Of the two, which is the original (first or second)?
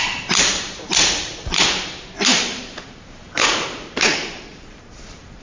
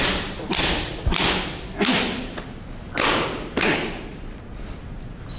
second